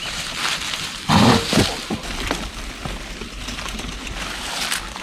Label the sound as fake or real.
real